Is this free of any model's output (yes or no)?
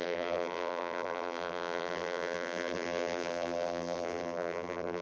no